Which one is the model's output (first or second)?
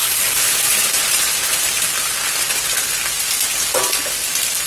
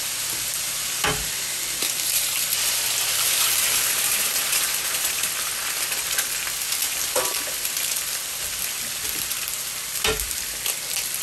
second